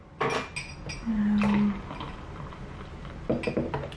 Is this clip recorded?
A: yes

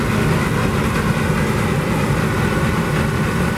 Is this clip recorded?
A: yes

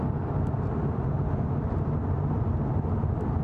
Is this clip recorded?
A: no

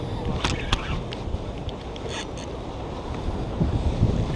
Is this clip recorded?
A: yes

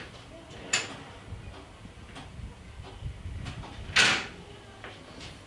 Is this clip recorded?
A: yes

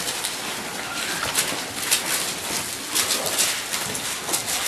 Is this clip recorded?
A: yes